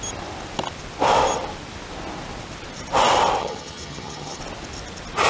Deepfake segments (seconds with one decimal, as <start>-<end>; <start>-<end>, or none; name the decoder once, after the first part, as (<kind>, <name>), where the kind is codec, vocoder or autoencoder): 3.4-4.4 (vocoder, HiFi-GAN)

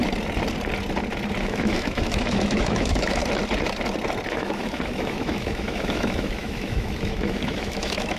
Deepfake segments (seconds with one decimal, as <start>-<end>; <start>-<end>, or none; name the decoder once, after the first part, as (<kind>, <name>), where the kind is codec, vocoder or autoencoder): 1.4-3.2 (autoencoder, DAC-VAE); 4.3-8.2

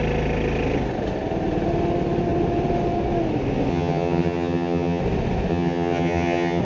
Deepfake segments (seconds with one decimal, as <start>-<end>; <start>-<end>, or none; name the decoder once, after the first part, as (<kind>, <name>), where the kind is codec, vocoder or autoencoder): 3.7-5.0 (vocoder, HiFi-GAN); 5.5-6.6